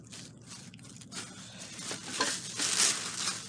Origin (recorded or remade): recorded